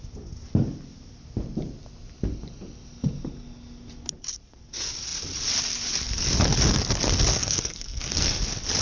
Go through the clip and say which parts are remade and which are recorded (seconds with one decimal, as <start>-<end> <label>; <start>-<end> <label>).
0.0-7.3 recorded; 7.3-8.4 remade; 8.4-8.8 recorded